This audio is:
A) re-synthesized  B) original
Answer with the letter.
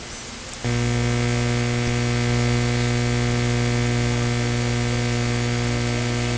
B